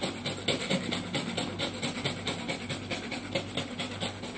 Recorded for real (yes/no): yes